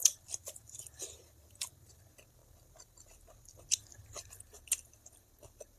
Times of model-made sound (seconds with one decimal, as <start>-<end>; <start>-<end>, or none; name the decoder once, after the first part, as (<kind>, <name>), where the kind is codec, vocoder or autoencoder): 0.0-2.0 (vocoder, BigVGAN v2); 2.4-3.6